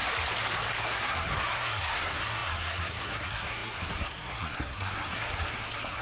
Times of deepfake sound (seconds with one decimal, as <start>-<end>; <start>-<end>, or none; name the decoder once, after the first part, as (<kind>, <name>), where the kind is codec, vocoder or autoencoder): 0.8-6.0 (codec, SNAC)